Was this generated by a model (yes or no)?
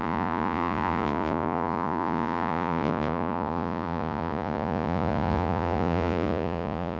yes